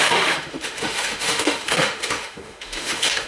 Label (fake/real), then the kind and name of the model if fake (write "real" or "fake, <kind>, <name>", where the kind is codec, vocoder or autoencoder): fake, autoencoder, DAC-VAE